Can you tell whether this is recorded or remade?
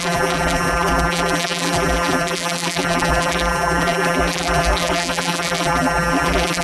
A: remade